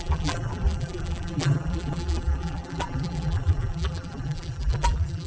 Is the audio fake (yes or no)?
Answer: yes